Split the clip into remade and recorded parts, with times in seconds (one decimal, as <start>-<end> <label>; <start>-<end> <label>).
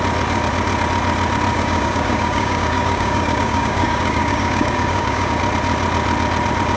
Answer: 0.0-1.5 recorded; 1.5-5.4 remade; 5.4-6.8 recorded